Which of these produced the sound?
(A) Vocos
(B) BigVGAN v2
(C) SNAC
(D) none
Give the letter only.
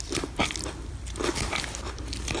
D